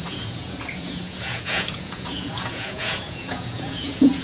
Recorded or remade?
remade